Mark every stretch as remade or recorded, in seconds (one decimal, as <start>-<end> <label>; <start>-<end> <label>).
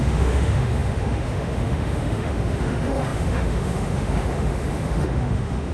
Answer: 0.0-5.7 remade